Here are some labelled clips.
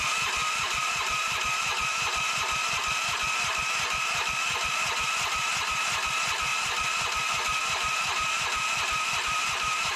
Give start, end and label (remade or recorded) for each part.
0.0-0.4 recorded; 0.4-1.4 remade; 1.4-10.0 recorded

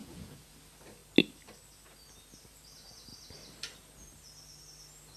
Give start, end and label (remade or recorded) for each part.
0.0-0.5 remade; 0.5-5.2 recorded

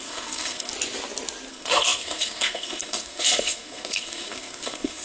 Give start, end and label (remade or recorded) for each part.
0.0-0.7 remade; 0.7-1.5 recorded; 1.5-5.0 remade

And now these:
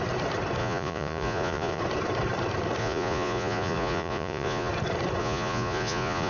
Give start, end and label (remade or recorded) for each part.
0.0-0.6 recorded; 0.6-1.8 remade; 1.8-2.8 recorded; 2.8-4.7 remade; 4.7-5.2 recorded; 5.2-6.3 remade

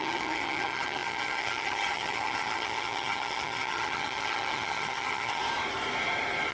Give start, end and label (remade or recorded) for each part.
0.0-5.4 remade; 5.4-6.5 recorded